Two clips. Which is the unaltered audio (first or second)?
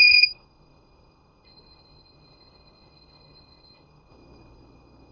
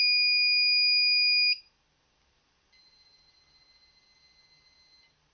second